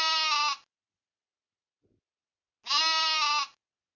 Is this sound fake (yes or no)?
no